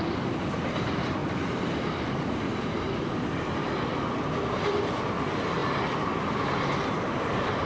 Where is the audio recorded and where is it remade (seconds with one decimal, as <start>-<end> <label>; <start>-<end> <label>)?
0.0-7.7 recorded